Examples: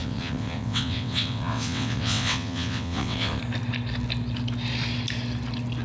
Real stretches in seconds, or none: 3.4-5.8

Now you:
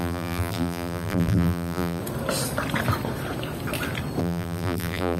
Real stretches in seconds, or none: 2.0-4.2

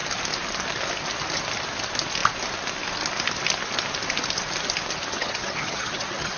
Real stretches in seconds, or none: 0.0-5.1

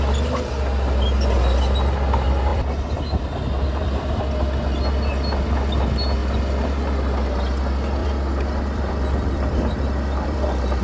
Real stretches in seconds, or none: 0.0-2.5; 4.2-6.2; 7.6-8.0